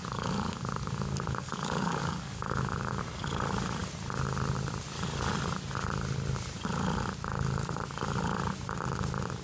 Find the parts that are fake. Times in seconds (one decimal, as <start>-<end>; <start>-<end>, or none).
0.0-3.0